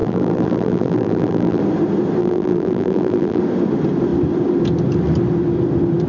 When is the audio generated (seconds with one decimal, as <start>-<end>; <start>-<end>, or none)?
0.0-1.6; 2.2-3.4